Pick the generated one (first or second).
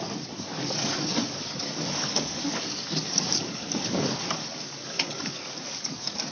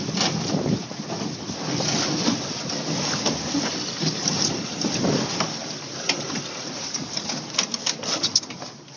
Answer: first